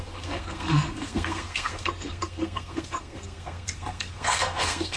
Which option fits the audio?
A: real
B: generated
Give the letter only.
B